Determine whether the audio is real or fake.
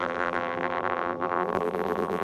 fake